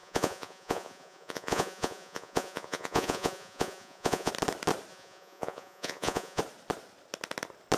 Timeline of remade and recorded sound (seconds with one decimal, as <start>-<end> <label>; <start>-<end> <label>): 0.0-4.3 remade; 4.3-4.9 recorded; 4.9-6.4 remade; 6.4-7.8 recorded